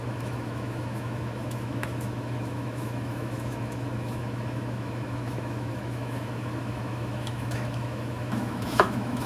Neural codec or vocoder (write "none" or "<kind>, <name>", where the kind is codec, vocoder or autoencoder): autoencoder, DAC-VAE